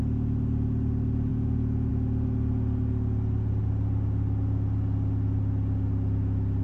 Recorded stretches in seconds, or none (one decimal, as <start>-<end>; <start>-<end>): 0.0-1.3; 1.9-6.6